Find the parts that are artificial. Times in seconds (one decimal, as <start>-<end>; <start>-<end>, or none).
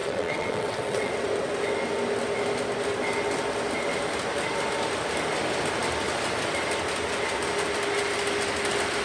0.0-1.1